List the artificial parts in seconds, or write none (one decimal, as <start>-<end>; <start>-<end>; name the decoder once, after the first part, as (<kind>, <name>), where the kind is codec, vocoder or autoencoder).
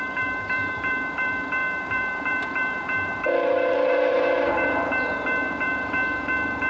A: 0.0-6.7 (vocoder, BigVGAN v2)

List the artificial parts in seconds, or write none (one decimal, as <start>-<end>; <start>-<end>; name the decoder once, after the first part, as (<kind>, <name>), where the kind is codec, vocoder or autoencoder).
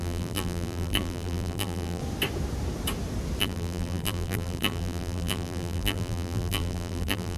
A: 0.0-2.0 (vocoder, BigVGAN v2); 3.4-7.4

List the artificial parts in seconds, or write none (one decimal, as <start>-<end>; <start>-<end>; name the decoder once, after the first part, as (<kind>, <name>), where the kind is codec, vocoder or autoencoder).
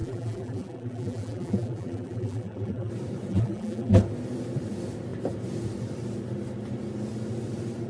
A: 0.0-2.9 (vocoder, BigVGAN v2); 3.3-4.0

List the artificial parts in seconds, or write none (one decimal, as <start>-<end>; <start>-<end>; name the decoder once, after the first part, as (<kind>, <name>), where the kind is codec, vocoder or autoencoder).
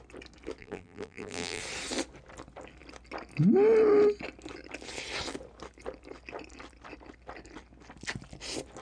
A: 0.6-1.6 (vocoder, BigVGAN v2)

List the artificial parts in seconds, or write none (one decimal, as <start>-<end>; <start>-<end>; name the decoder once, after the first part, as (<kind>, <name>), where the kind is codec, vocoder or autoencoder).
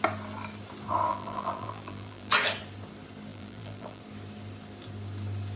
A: 1.1-2.3 (vocoder, BigVGAN v2); 3.3-4.0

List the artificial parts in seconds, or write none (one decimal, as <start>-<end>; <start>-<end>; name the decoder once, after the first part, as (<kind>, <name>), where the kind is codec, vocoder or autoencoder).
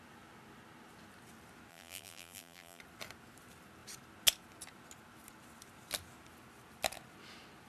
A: 1.7-2.8 (vocoder, BigVGAN v2)